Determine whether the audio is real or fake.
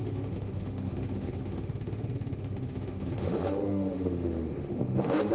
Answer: fake